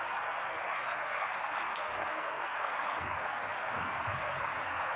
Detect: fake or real fake